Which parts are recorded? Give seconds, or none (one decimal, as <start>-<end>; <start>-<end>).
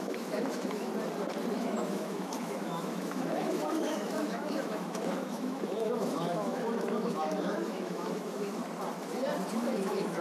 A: 0.9-1.5; 8.6-9.5